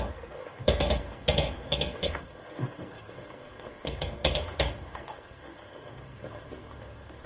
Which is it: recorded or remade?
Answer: remade